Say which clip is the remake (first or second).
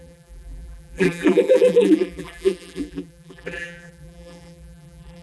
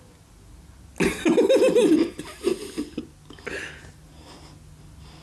first